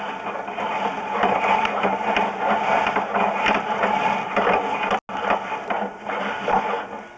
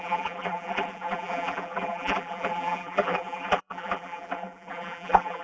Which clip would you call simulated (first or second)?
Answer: second